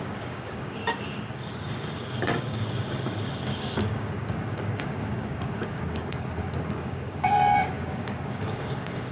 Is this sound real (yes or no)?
no